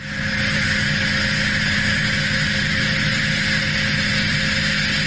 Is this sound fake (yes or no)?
no